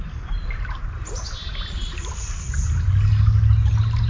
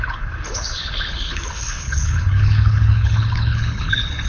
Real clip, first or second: first